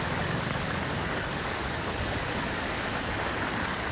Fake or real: fake